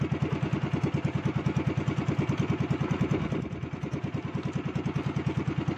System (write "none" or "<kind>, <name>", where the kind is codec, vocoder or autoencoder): none